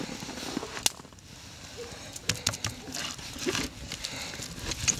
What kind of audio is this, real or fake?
real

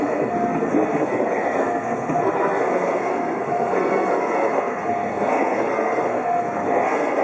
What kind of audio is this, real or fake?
fake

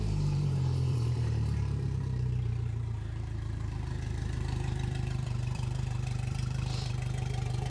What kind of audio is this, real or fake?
fake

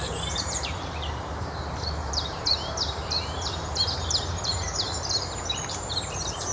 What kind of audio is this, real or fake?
fake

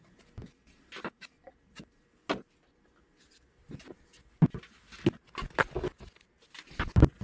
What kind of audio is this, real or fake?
real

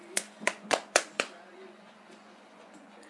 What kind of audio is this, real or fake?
fake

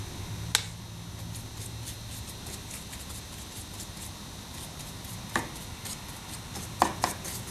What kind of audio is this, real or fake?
real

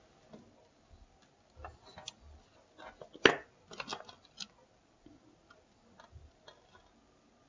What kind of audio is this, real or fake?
real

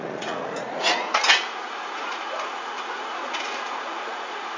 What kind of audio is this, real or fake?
fake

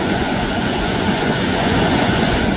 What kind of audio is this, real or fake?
fake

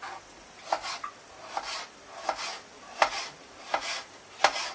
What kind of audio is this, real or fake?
real